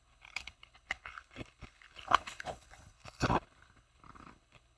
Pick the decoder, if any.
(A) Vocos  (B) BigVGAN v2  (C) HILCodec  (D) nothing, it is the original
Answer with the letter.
C